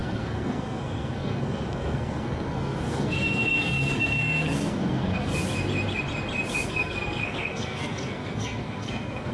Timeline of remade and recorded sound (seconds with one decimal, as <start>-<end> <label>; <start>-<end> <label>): 0.0-5.4 remade; 5.4-6.5 recorded; 6.5-9.3 remade

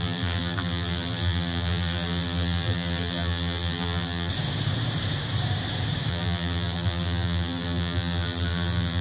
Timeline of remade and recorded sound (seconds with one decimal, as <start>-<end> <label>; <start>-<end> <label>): 0.0-4.3 remade; 4.3-6.1 recorded; 6.1-9.0 remade